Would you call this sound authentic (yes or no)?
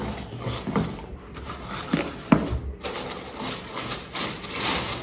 yes